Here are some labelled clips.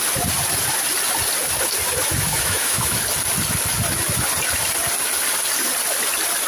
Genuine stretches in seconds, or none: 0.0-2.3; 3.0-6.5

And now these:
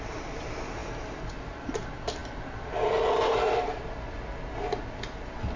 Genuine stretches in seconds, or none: 0.0-5.6

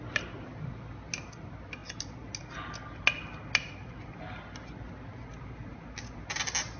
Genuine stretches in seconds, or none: 0.0-6.8